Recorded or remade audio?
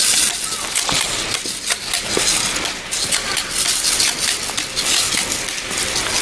recorded